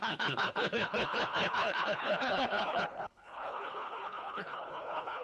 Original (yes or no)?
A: no